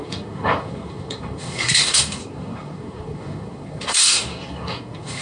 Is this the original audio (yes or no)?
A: no